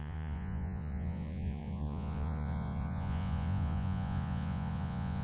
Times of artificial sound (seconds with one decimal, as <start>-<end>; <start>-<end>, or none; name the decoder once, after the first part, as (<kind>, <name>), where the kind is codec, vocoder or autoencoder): 0.0-5.2 (vocoder, Vocos)